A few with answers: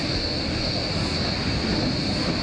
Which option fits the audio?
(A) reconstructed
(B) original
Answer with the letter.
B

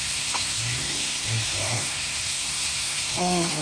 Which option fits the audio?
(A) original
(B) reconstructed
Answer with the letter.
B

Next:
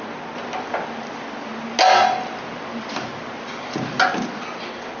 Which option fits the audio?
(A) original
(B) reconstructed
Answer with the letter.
A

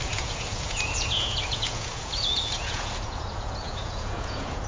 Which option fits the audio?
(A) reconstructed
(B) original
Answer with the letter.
A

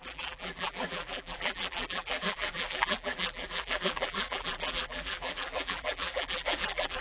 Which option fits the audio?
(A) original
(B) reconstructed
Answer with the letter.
B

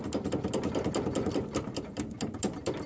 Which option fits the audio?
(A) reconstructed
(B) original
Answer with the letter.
B